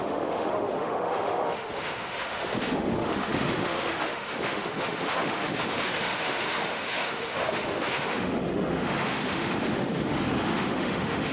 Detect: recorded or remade remade